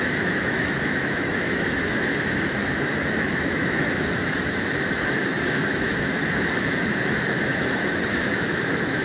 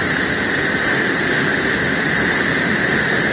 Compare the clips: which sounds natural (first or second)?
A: second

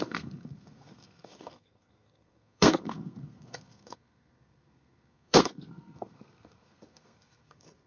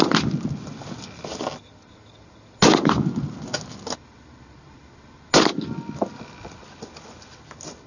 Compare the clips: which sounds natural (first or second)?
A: second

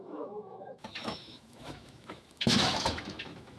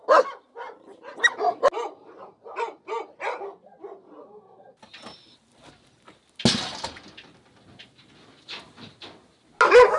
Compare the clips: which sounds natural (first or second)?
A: second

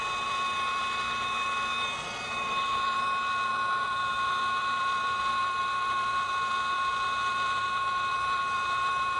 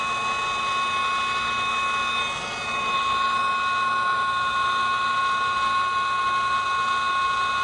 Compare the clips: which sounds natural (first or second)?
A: second